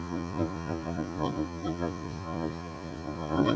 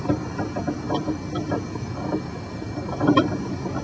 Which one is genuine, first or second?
second